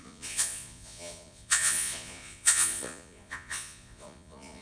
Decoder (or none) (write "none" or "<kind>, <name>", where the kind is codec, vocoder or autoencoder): vocoder, Vocos